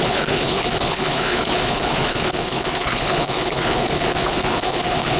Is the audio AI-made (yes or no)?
yes